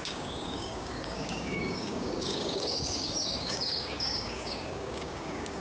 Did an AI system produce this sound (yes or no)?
yes